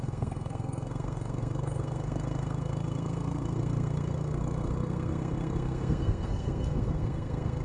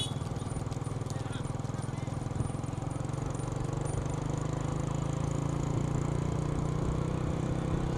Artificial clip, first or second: first